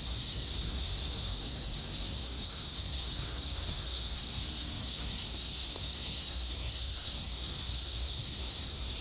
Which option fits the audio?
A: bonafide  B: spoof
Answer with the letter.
B